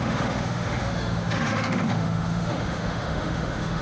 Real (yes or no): no